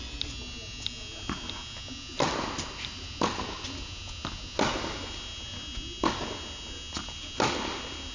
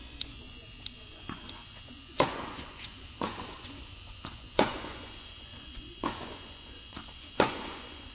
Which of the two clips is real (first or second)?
first